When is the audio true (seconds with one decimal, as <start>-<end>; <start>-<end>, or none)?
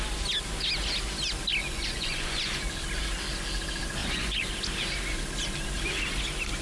0.0-1.6; 2.5-4.0; 4.5-6.6